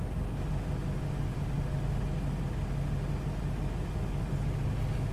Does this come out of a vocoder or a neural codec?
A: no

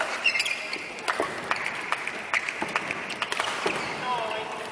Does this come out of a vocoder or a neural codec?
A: no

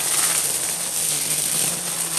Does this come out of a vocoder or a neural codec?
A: no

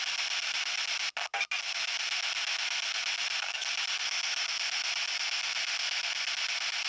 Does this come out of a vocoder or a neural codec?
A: no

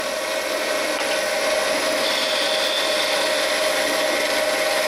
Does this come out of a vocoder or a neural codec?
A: no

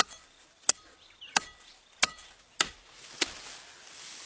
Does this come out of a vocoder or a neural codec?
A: no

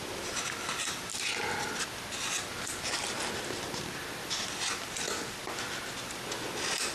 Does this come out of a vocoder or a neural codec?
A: no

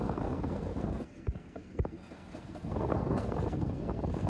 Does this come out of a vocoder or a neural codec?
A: yes